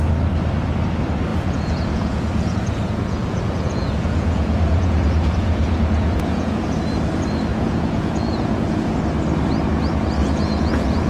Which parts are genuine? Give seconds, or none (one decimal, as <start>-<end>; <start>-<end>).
0.0-1.3; 6.6-7.5; 9.0-10.2